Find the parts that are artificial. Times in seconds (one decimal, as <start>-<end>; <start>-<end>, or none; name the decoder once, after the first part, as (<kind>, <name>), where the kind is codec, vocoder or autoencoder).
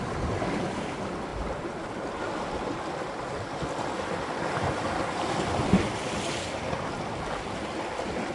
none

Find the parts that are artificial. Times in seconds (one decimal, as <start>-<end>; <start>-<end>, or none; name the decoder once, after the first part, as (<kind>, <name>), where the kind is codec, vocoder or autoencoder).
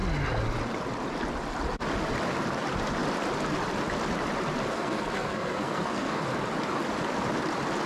4.7-6.3 (codec, SNAC)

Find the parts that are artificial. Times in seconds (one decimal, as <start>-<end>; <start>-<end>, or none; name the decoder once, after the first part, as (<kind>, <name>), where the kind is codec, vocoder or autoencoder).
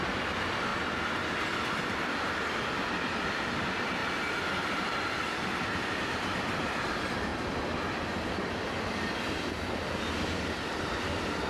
0.0-0.7 (vocoder, BigVGAN v2); 1.9-4.0; 4.6-11.5